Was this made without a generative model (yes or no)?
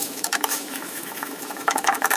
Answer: no